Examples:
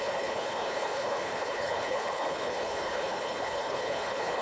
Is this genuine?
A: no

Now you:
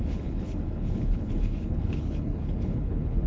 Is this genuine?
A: no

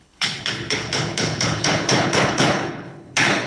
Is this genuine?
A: no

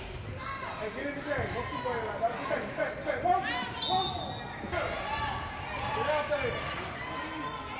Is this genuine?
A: yes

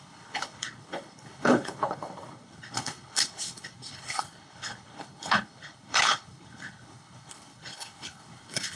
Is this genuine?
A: no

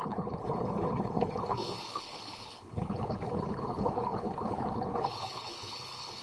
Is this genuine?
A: no